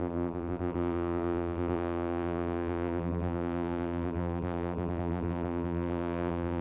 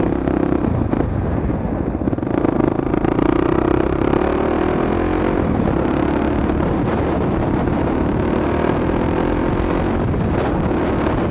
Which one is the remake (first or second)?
first